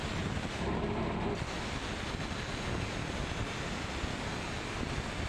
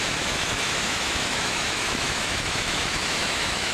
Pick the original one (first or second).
first